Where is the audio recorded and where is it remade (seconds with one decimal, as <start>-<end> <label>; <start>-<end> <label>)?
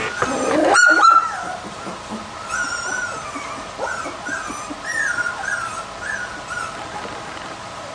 0.0-7.9 recorded